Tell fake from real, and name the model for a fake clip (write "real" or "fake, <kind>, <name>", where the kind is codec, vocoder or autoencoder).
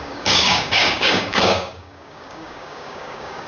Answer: fake, codec, DAC